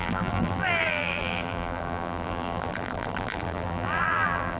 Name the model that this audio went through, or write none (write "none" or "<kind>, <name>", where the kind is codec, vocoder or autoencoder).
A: vocoder, BigVGAN v2